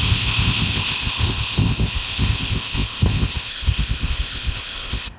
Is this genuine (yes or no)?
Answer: no